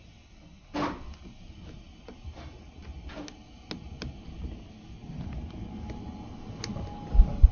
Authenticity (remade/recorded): recorded